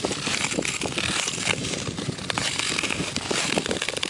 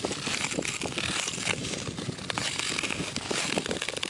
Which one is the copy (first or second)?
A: first